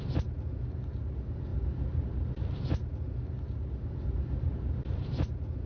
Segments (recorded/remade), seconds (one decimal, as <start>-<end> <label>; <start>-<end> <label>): 0.0-5.7 recorded